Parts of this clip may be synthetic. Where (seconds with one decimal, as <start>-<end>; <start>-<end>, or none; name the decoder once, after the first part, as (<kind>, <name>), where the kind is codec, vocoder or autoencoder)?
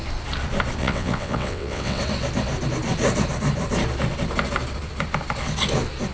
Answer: 0.8-2.0 (vocoder, WaveNeXt)